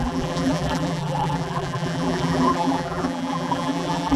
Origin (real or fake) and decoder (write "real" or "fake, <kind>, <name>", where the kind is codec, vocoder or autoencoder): fake, vocoder, BigVGAN v2